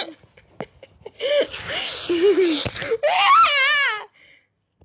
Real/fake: real